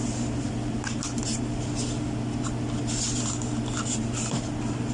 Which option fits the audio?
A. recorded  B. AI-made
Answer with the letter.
A